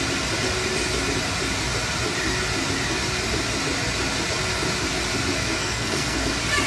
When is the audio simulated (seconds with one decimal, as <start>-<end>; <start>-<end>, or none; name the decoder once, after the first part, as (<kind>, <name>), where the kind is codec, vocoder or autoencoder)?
5.3-6.3 (codec, SNAC)